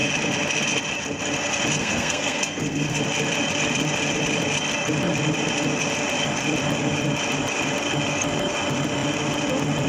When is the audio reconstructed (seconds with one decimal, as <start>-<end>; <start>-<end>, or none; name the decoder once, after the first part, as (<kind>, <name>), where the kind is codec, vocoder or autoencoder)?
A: 1.8-3.0 (codec, SNAC)